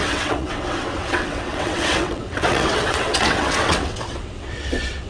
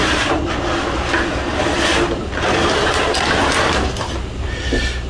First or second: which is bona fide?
second